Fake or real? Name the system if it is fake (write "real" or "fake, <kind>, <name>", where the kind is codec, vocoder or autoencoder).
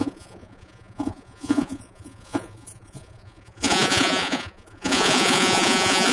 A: fake, vocoder, Vocos